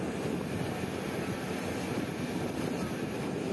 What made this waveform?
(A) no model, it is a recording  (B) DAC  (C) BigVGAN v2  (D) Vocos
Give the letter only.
A